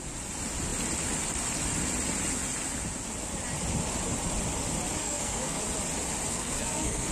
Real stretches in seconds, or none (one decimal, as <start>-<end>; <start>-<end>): 0.0-5.0; 5.6-6.3